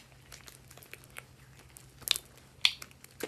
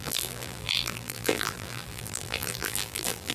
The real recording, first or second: first